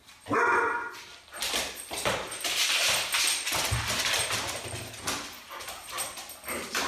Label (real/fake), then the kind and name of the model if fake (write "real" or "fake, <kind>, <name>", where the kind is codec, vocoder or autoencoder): real